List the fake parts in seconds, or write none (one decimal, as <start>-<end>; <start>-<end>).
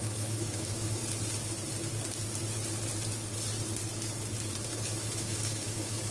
0.0-1.0; 4.7-6.1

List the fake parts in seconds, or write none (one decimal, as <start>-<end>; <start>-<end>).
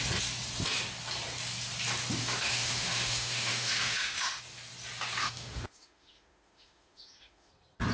2.2-4.4; 5.2-7.5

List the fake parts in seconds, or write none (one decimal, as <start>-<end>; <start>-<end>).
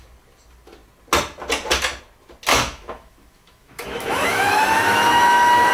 2.5-5.7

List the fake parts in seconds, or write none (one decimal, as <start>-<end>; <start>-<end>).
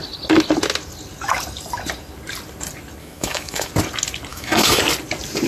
3.0-3.7; 4.3-4.8